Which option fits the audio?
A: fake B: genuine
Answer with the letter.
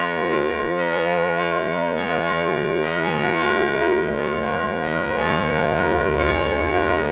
A